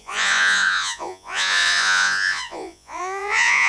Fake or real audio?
fake